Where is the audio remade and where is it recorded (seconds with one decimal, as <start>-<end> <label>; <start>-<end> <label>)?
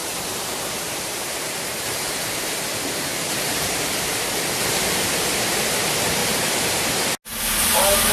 0.0-2.0 remade; 2.0-6.2 recorded; 6.2-6.8 remade; 6.8-8.1 recorded